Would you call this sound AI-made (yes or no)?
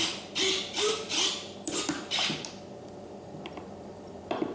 no